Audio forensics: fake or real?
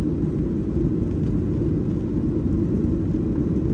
real